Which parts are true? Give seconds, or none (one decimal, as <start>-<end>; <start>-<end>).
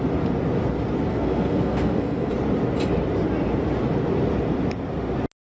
0.0-1.1; 2.3-5.4